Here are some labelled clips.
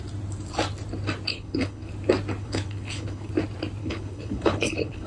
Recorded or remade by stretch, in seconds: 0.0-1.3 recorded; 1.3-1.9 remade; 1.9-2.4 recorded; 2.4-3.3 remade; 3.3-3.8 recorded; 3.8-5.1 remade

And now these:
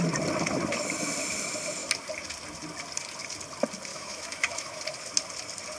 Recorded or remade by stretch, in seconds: 0.0-3.9 recorded; 3.9-4.8 remade; 4.8-5.8 recorded

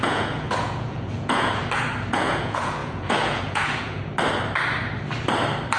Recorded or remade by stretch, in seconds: 0.0-1.6 remade; 1.6-2.1 recorded; 2.1-4.0 remade; 4.0-5.8 recorded

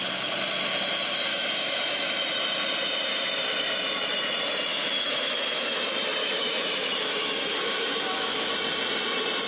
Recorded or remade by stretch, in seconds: 0.0-1.3 recorded; 1.3-2.1 remade; 2.1-4.7 recorded; 4.7-5.8 remade; 5.8-6.2 recorded; 6.2-8.5 remade; 8.5-9.5 recorded

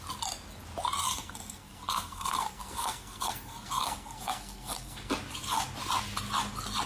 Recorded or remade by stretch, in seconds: 0.0-1.0 recorded; 1.0-5.1 remade; 5.1-6.9 recorded

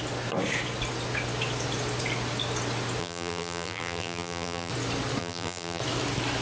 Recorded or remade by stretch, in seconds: 0.0-3.0 recorded; 3.0-4.7 remade; 4.7-5.2 recorded; 5.2-5.8 remade; 5.8-6.4 recorded